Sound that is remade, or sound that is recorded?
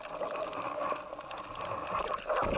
recorded